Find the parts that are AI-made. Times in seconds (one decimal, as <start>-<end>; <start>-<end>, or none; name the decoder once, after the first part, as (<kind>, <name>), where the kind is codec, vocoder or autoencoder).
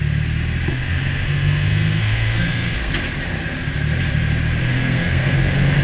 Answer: 0.7-2.9 (codec, SNAC); 4.6-5.8